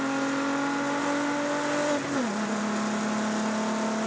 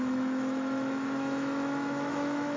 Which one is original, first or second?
first